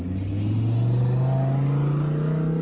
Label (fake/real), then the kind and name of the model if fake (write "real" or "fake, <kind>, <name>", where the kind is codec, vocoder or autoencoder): real